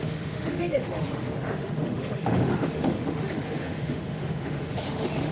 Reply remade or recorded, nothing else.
remade